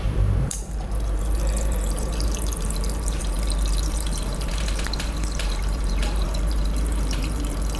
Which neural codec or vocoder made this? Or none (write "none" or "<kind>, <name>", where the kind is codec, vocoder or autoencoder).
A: vocoder, BigVGAN v2